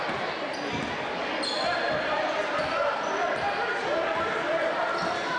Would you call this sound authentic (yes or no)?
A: yes